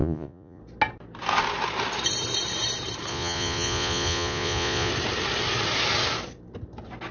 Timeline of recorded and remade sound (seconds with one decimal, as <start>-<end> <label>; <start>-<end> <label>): 0.0-0.6 remade; 0.6-3.1 recorded; 3.1-4.9 remade; 4.9-7.1 recorded